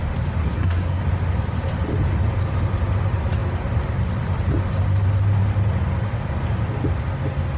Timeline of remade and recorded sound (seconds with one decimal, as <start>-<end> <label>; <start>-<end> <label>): 0.0-0.4 recorded; 0.4-1.0 remade; 1.0-7.6 recorded